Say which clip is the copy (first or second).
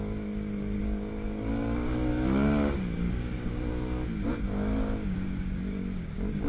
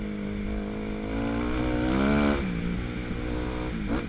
first